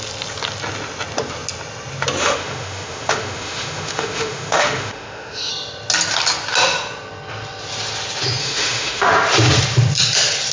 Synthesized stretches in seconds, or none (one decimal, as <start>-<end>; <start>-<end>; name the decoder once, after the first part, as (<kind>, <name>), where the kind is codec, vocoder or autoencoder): 2.2-5.5 (autoencoder, DAC-VAE); 8.4-9.1